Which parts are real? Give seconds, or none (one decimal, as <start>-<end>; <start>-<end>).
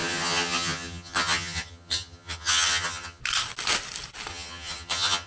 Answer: 3.2-4.3